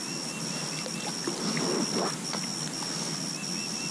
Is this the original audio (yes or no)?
yes